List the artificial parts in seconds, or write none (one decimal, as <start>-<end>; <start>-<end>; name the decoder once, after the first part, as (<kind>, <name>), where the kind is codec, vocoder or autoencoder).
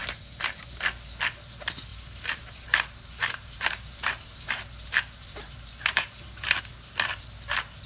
1.9-6.6 (vocoder, BigVGAN v2)